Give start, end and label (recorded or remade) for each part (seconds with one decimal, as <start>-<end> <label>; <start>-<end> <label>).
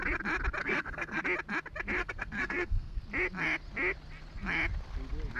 0.0-0.6 recorded; 0.6-1.2 remade; 1.2-2.0 recorded; 2.0-3.0 remade; 3.0-5.4 recorded